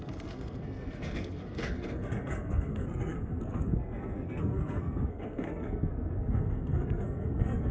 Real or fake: fake